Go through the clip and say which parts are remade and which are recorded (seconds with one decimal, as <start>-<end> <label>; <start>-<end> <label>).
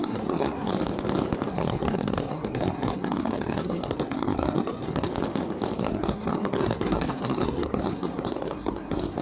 0.0-0.7 remade; 0.7-1.5 recorded; 1.5-5.1 remade; 5.1-5.8 recorded; 5.8-9.2 remade